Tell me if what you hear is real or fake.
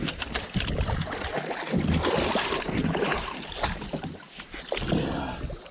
real